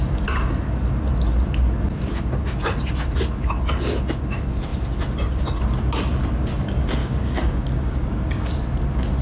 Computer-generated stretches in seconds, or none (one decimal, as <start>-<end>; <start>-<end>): 7.0-8.5